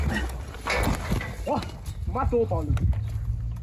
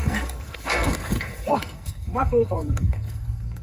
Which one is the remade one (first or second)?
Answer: second